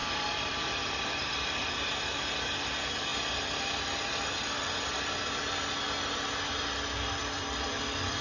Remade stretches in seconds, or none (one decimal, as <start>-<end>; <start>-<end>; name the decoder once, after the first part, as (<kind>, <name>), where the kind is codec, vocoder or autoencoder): 0.0-1.7 (vocoder, BigVGAN v2); 7.2-8.2